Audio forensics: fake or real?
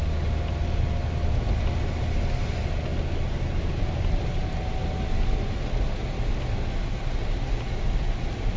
real